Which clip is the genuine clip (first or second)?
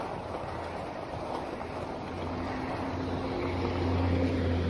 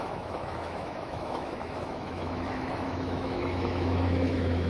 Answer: first